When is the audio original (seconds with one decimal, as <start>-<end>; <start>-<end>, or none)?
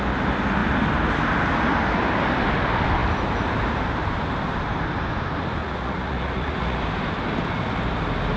0.0-5.6; 6.8-8.4